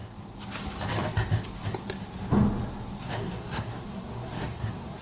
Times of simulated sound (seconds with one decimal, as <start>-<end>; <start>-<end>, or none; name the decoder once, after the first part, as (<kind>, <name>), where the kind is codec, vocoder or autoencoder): 3.0-5.0 (codec, SNAC)